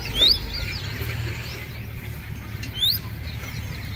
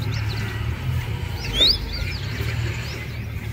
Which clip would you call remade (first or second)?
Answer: first